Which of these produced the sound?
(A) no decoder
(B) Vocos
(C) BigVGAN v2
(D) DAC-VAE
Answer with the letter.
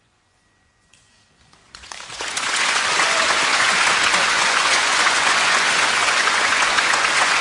B